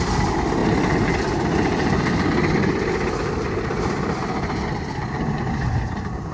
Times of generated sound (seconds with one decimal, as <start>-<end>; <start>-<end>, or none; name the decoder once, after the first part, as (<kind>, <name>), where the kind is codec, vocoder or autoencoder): 0.0-6.3 (vocoder, BigVGAN v2)